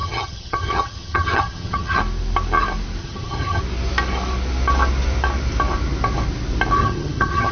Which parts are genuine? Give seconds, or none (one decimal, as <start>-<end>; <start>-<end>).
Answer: 2.0-3.0; 3.6-6.8